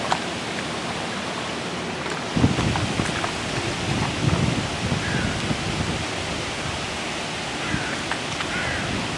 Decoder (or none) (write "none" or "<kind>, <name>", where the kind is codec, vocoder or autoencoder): none